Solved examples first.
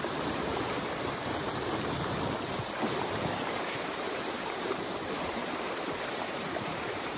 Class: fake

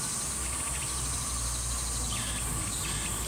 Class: real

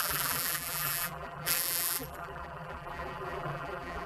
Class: fake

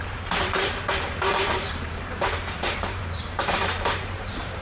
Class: fake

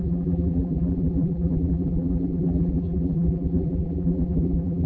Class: fake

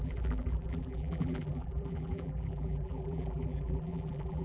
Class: fake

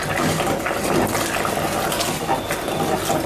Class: real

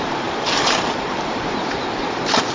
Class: fake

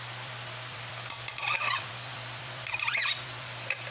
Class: fake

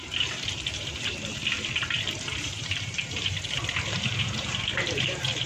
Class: fake